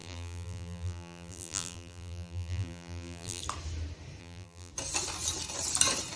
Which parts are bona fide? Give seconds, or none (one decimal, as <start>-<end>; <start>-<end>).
3.4-4.2; 4.7-6.2